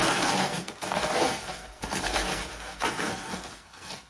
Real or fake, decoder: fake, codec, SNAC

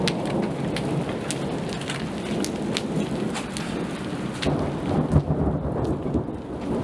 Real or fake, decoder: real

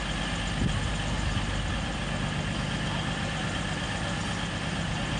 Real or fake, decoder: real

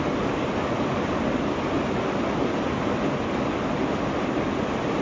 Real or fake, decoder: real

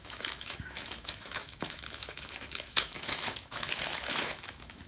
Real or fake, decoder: fake, autoencoder, DAC-VAE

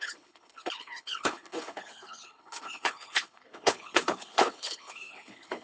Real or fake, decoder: fake, codec, HILCodec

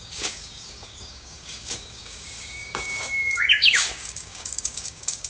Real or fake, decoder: fake, codec, DAC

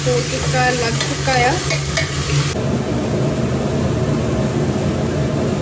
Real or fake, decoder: real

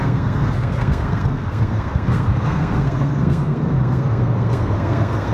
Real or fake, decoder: fake, codec, SNAC